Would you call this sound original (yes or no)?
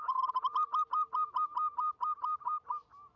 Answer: yes